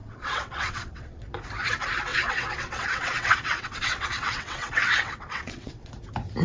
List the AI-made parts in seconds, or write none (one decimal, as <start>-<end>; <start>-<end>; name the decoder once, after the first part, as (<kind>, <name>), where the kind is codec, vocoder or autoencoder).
0.0-1.2 (vocoder, WaveNeXt); 2.1-5.9

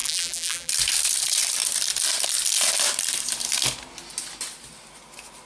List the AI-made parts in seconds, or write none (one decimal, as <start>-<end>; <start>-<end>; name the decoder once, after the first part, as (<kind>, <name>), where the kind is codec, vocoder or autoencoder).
0.0-0.7 (vocoder, BigVGAN v2)

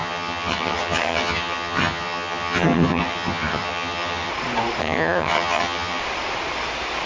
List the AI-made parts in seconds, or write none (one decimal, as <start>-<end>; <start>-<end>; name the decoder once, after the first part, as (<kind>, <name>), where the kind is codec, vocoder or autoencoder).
0.0-4.3 (vocoder, HiFi-GAN); 4.8-6.0